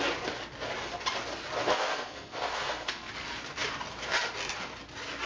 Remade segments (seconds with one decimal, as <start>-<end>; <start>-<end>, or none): 1.6-3.1